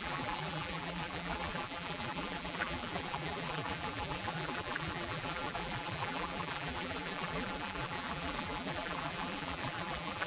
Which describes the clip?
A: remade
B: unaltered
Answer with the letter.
A